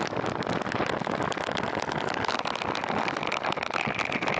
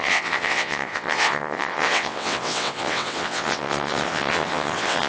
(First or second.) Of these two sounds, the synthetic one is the second